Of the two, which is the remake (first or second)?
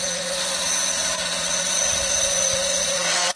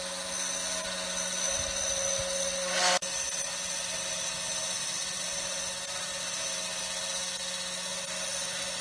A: first